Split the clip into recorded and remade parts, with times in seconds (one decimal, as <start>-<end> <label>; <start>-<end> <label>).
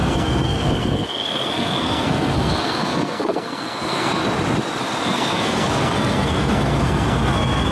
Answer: 0.0-4.2 remade; 4.2-5.0 recorded; 5.0-7.7 remade